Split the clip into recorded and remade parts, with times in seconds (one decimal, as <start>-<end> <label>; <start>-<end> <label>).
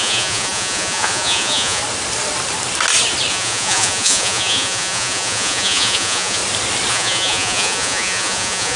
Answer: 0.0-1.8 remade; 1.8-3.3 recorded; 3.3-6.4 remade; 6.4-6.9 recorded; 6.9-8.8 remade